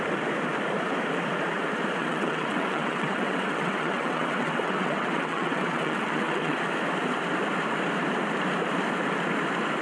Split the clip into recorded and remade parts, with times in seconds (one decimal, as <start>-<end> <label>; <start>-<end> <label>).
0.0-2.0 recorded; 2.0-6.6 remade; 6.6-9.8 recorded